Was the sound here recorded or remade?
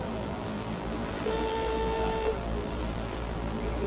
remade